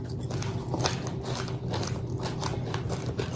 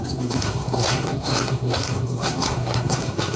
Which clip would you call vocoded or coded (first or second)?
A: second